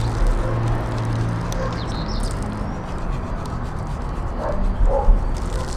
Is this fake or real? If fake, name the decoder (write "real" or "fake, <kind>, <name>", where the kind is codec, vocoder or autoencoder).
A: real